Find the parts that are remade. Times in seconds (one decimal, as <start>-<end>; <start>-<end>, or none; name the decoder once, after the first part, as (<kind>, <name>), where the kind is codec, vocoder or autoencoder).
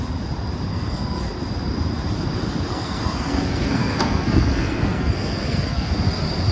0.7-1.2 (codec, SNAC); 2.7-5.9